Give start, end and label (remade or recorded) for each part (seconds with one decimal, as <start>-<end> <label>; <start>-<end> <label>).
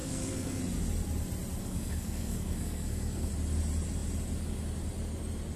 0.0-0.6 remade; 0.6-1.6 recorded; 1.6-3.3 remade; 3.3-5.6 recorded